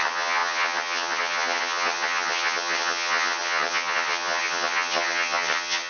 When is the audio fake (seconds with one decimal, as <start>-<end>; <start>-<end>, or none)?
0.0-5.9